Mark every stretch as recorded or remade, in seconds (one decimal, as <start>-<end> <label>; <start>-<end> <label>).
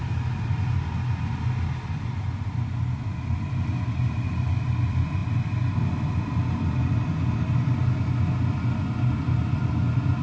0.0-10.2 recorded